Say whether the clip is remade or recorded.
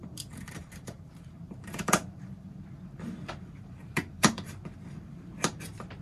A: remade